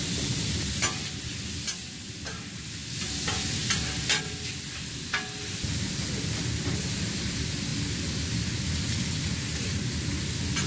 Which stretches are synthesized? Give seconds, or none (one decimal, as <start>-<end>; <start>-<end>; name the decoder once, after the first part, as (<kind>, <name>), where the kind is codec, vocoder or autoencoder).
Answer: none